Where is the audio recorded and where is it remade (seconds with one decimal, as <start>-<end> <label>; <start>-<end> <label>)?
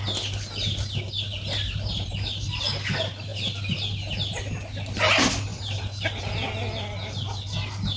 0.0-8.0 recorded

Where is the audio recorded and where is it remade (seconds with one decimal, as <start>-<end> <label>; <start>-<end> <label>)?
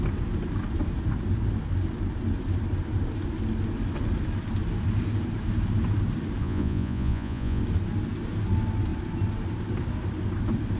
0.0-6.4 recorded; 6.4-7.6 remade; 7.6-10.8 recorded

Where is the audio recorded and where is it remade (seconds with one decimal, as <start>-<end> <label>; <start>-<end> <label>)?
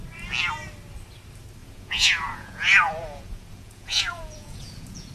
0.0-1.6 recorded; 1.6-5.1 remade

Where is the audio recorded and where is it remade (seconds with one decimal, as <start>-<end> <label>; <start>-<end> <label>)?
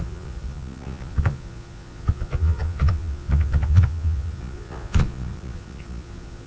0.0-6.5 remade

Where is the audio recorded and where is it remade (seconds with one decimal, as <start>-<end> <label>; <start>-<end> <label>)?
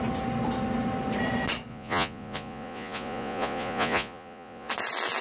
0.0-1.7 recorded; 1.7-4.7 remade; 4.7-5.2 recorded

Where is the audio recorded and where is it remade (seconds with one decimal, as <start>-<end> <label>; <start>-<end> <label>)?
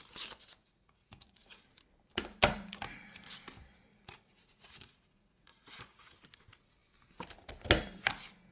0.0-0.6 recorded; 0.6-1.6 remade; 1.6-3.9 recorded; 3.9-6.1 remade; 6.1-8.5 recorded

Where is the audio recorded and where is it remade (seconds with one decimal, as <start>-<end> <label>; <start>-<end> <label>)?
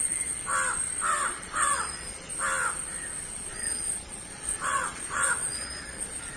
0.0-0.5 remade; 0.5-1.3 recorded; 1.3-2.3 remade; 2.3-3.5 recorded; 3.5-6.4 remade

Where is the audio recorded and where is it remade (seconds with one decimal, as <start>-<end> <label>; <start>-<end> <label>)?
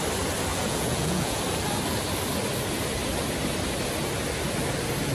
0.0-0.5 recorded; 0.5-1.4 remade; 1.4-5.1 recorded